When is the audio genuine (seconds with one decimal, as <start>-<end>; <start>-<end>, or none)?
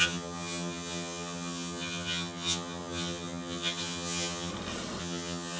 4.5-5.0